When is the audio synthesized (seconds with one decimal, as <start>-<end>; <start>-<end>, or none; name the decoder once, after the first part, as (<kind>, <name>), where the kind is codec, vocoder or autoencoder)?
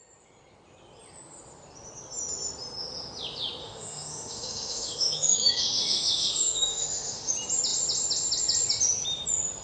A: 3.6-7.3 (autoencoder, DAC-VAE)